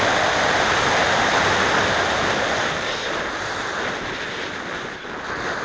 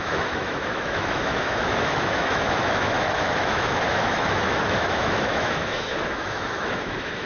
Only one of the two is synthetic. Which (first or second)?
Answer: second